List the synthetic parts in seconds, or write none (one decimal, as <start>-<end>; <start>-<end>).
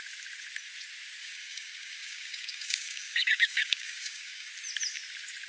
1.2-4.5